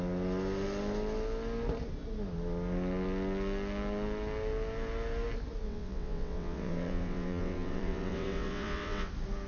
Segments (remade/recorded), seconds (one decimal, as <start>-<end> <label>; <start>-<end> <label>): 0.0-5.6 recorded; 5.6-9.1 remade; 9.1-9.5 recorded